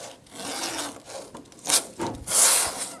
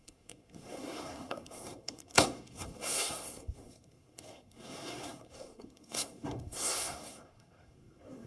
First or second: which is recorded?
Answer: first